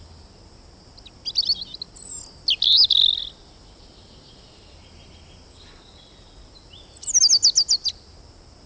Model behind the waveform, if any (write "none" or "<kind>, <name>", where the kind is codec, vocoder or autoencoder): none